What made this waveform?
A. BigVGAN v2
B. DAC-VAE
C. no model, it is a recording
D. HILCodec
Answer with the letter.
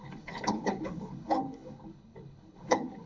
D